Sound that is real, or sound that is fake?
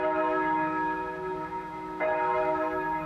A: fake